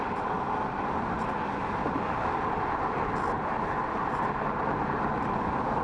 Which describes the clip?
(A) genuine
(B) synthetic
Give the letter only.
A